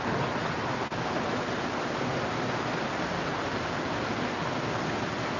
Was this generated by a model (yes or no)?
no